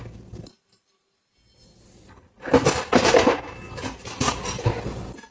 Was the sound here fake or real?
real